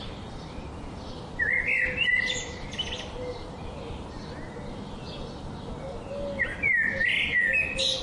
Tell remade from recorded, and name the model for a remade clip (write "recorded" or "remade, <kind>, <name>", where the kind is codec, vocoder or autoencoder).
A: recorded